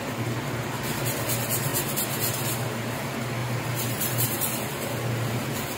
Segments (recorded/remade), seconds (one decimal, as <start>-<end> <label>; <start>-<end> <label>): 0.0-3.4 recorded; 3.4-4.1 remade; 4.1-5.8 recorded